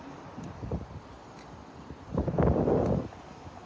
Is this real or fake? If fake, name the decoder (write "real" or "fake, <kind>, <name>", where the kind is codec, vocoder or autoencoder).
real